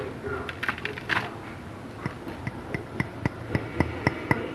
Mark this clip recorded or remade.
recorded